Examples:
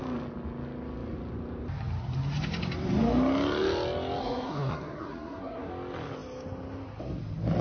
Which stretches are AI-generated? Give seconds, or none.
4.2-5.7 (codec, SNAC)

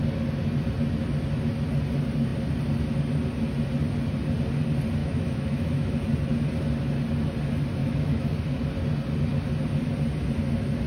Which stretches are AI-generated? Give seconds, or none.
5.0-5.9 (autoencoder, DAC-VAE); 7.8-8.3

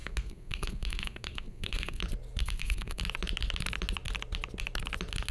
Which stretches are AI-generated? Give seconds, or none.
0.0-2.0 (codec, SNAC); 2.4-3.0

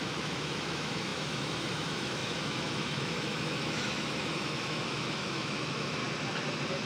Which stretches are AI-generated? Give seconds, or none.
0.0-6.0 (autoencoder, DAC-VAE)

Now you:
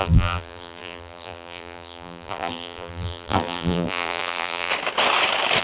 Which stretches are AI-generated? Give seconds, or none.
0.0-4.7 (vocoder, BigVGAN v2)

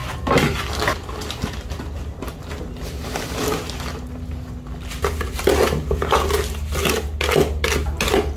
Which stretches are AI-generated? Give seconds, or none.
none

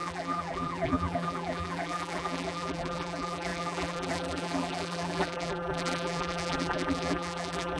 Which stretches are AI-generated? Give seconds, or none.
0.0-7.8 (vocoder, BigVGAN v2)